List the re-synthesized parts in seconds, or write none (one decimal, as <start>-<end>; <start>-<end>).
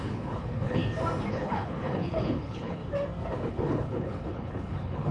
0.0-0.8; 1.3-2.8; 3.5-5.1